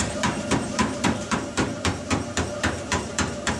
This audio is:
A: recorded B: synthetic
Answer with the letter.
B